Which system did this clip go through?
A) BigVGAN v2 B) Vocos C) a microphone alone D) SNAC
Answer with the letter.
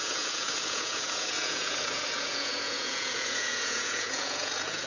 B